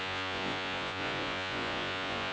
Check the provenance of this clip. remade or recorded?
remade